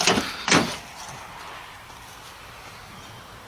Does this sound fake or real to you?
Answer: real